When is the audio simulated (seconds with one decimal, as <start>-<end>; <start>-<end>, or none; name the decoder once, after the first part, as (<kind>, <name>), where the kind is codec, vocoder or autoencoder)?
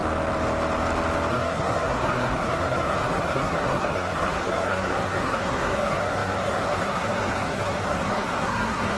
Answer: 1.3-9.0 (codec, SNAC)